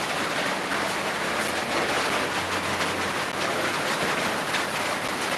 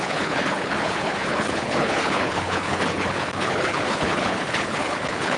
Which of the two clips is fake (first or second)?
second